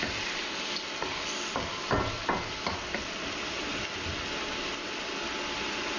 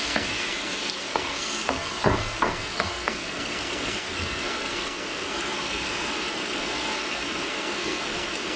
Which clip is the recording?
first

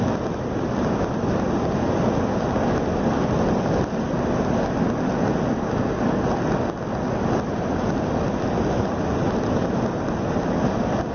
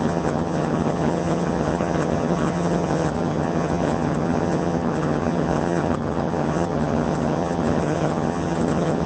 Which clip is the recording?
first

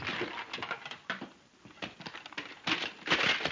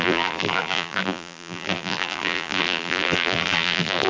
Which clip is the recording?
first